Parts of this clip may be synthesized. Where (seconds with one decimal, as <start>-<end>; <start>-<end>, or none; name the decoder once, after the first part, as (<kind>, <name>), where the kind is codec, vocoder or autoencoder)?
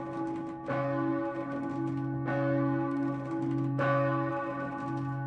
none